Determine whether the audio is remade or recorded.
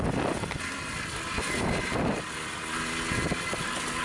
recorded